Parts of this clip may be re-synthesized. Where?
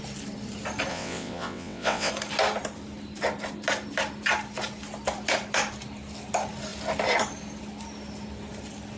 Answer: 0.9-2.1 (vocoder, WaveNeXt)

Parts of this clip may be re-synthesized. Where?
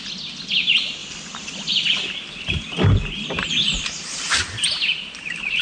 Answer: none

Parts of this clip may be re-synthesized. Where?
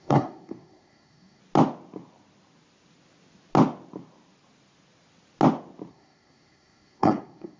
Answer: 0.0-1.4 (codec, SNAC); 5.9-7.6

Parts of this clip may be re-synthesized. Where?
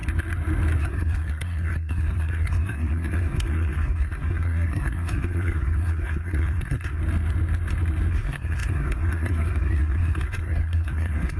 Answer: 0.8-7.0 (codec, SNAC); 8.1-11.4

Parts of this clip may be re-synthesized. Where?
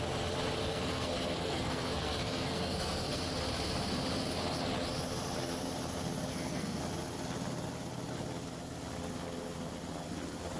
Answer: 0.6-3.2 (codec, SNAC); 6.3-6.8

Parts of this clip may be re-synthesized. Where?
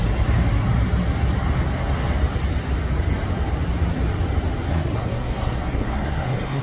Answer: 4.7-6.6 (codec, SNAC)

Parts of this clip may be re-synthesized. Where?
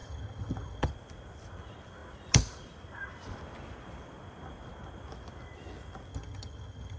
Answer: 0.0-0.9 (vocoder, HiFi-GAN); 6.1-7.0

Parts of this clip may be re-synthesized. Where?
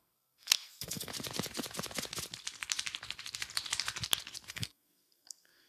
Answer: 0.0-1.1 (codec, SNAC); 4.5-5.7